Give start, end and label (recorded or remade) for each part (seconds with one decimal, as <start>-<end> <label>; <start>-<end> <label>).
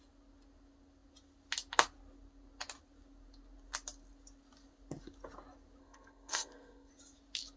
0.0-5.8 recorded; 5.8-6.9 remade; 6.9-7.6 recorded